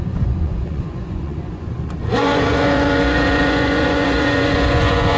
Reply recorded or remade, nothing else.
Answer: remade